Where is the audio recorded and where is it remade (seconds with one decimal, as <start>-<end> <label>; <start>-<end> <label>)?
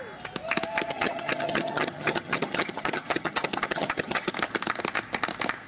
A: 0.0-0.9 recorded; 0.9-4.3 remade; 4.3-5.7 recorded